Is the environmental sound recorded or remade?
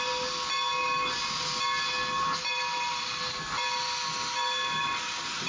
recorded